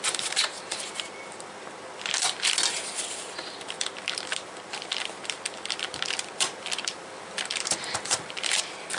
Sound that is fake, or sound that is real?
fake